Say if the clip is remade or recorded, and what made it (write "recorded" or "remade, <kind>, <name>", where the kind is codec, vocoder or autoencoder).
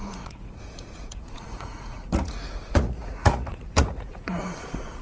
remade, vocoder, Vocos